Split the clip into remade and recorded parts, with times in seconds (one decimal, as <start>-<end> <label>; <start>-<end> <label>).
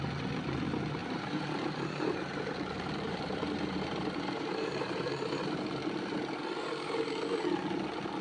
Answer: 0.0-1.0 recorded; 1.0-5.4 remade; 5.4-8.2 recorded